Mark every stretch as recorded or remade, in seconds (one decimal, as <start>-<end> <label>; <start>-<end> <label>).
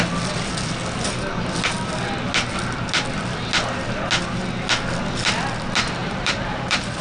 0.0-6.0 recorded; 6.0-7.0 remade